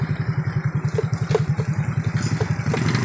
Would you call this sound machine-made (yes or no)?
no